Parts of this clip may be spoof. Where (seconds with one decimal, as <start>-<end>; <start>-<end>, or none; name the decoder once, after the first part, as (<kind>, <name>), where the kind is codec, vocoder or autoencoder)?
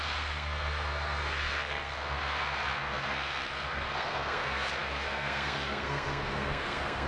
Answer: 0.0-7.1 (codec, SNAC)